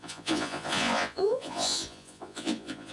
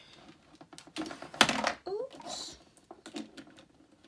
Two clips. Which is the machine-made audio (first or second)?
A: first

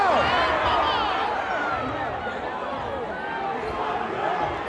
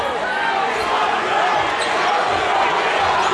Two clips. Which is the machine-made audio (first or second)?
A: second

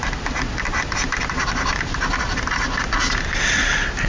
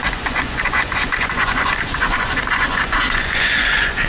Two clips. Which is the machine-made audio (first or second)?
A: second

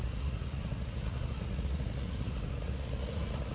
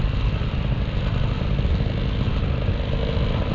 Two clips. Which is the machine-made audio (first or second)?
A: first